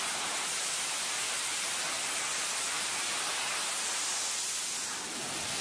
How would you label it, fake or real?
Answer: real